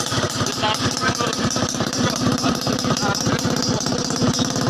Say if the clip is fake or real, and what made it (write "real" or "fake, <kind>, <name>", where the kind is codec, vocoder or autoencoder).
fake, vocoder, BigVGAN v2